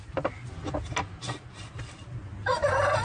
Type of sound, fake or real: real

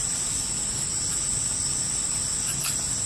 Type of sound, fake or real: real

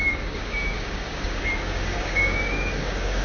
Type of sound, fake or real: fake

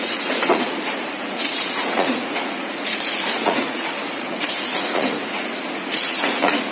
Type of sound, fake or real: fake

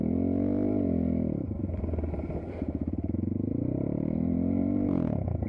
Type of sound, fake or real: fake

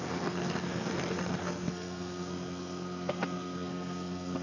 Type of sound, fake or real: fake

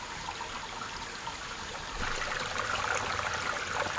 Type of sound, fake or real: real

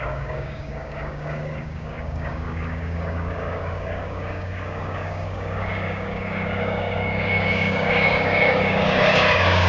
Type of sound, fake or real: fake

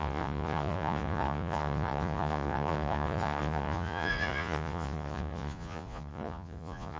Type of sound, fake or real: fake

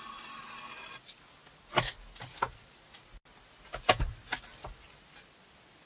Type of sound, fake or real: real